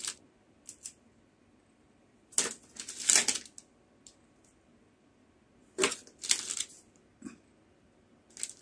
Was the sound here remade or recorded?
recorded